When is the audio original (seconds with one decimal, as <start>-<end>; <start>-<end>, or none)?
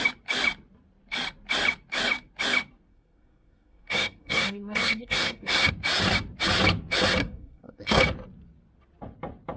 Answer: 0.0-2.9; 5.7-7.2; 8.0-9.6